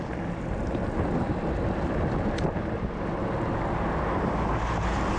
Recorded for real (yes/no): yes